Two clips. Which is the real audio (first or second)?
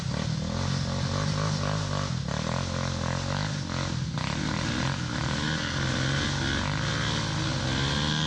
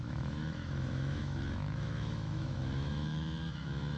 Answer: first